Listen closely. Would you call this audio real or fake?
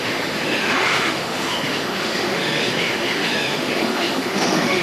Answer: fake